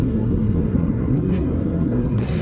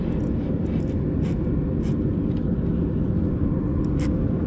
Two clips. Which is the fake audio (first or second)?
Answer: first